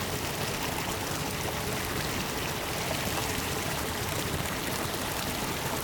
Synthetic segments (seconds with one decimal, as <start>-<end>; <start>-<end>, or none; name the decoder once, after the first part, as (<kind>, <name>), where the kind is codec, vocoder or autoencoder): 3.2-4.8 (vocoder, BigVGAN v2)